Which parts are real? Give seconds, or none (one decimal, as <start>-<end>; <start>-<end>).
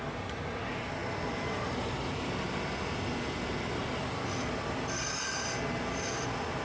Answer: 0.0-1.0; 4.2-6.6